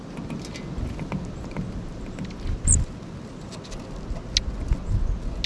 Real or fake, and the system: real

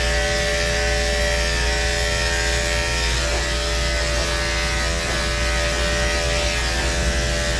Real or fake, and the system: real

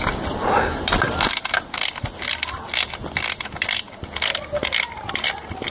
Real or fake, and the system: real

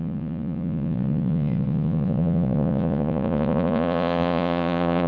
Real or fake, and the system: fake, vocoder, Vocos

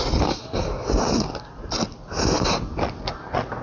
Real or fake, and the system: real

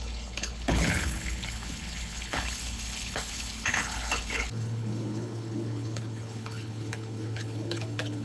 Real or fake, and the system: fake, codec, HILCodec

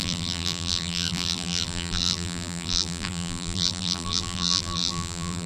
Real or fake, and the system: fake, vocoder, BigVGAN v2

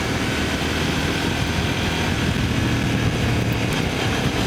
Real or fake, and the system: real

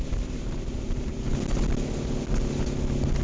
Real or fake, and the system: real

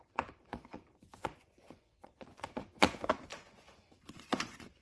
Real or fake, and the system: fake, vocoder, Vocos